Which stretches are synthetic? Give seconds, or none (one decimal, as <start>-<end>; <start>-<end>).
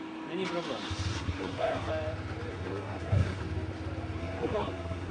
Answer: 1.1-1.9; 2.5-3.4; 4.2-5.1